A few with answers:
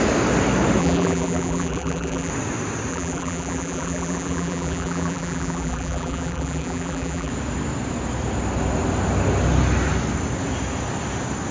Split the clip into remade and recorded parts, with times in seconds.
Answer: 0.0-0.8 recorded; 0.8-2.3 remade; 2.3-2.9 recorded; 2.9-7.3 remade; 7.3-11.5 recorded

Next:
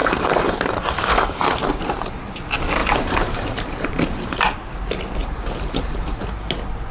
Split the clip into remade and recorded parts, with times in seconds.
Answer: 0.0-1.0 remade; 1.0-2.8 recorded; 2.8-4.4 remade; 4.4-5.2 recorded; 5.2-6.3 remade; 6.3-6.9 recorded